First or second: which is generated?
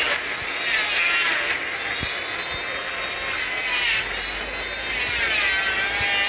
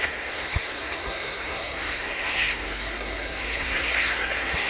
second